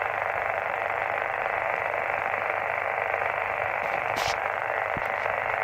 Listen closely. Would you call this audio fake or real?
fake